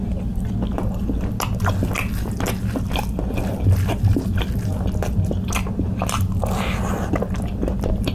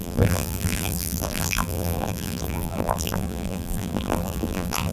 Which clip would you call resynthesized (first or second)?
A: second